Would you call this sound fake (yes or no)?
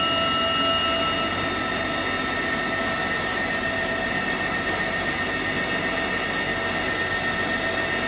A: no